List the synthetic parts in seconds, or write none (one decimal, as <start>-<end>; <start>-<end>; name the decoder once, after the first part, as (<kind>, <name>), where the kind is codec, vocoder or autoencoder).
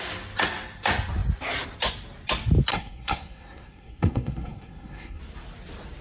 2.7-5.2 (codec, SNAC)